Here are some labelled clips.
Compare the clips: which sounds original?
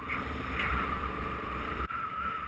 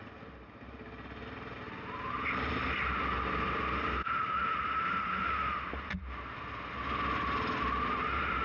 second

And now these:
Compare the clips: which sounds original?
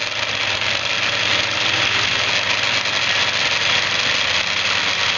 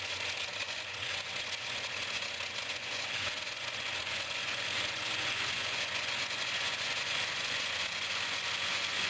first